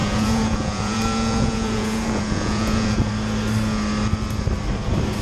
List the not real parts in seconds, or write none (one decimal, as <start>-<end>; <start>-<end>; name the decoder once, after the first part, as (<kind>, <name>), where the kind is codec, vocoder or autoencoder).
0.0-3.1 (vocoder, Vocos)